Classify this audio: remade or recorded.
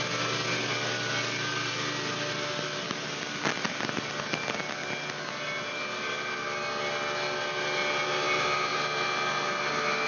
recorded